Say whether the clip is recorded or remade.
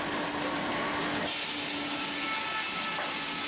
recorded